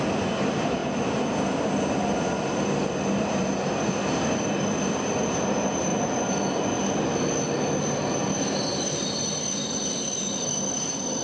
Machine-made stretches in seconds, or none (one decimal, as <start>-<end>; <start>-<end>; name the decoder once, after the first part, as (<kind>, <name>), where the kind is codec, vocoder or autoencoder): 0.0-0.8 (vocoder, BigVGAN v2); 3.2-5.9; 7.8-11.2